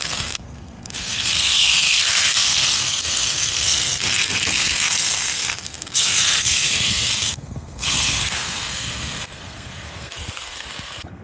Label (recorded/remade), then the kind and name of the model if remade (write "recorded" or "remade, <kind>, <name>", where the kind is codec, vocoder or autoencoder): remade, codec, SNAC